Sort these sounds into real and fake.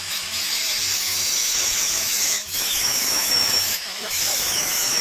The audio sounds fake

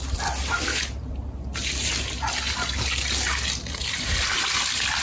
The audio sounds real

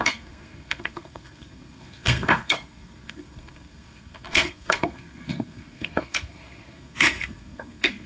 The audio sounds fake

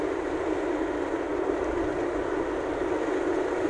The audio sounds real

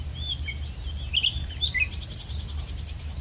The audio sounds real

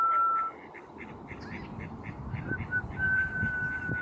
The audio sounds real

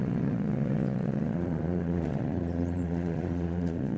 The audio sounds fake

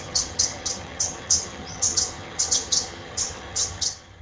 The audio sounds fake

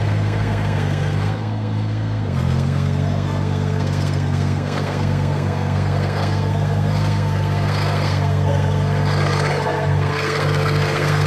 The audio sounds fake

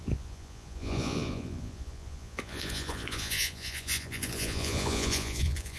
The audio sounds fake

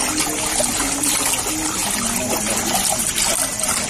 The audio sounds real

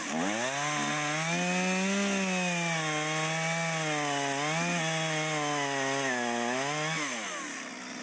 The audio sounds real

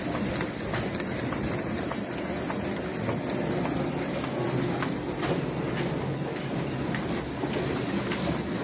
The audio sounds real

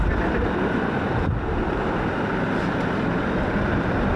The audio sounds fake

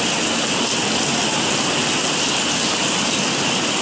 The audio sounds real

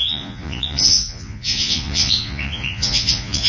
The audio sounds fake